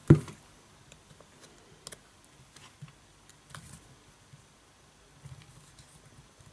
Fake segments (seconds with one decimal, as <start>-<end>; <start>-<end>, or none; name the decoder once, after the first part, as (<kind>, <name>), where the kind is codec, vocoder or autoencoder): none